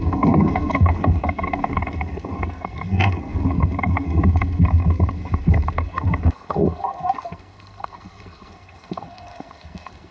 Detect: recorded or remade remade